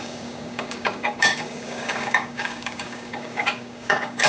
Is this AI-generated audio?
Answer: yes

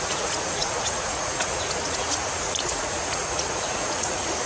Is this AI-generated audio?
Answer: yes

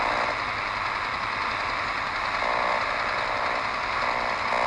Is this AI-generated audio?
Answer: no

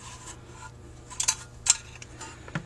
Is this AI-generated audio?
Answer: no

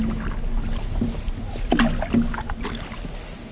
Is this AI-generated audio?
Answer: no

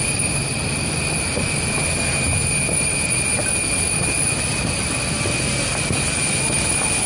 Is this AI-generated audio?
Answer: no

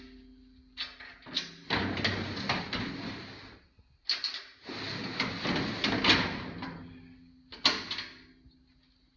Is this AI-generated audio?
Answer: no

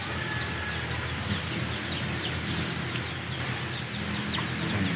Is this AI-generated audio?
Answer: no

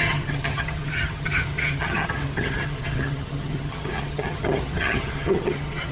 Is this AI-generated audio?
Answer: yes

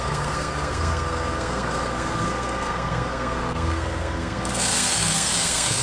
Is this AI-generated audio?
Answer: yes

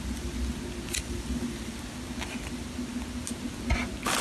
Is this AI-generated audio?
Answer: no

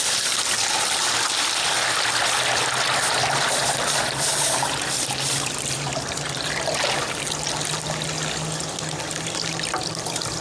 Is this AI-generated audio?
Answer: no